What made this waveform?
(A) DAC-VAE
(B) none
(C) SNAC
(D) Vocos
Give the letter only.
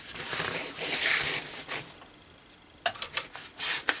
B